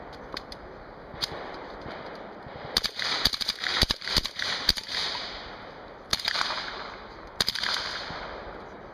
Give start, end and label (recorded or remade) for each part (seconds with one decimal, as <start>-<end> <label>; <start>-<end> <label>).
0.0-1.1 recorded; 1.1-5.5 remade; 5.5-6.1 recorded; 6.1-6.9 remade; 6.9-8.9 recorded